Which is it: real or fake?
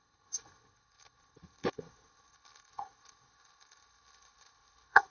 fake